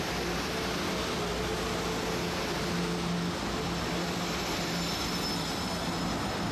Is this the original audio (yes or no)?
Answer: yes